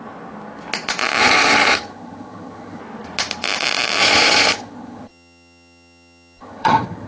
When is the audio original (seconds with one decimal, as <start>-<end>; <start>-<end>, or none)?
0.0-1.2; 2.8-4.0